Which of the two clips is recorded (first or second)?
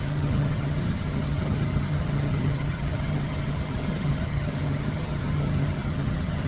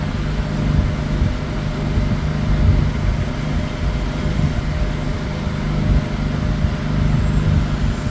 second